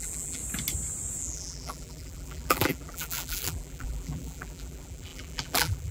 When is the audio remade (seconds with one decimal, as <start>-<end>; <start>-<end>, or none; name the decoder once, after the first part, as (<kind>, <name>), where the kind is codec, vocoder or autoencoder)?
0.0-0.4 (vocoder, BigVGAN v2); 1.2-5.9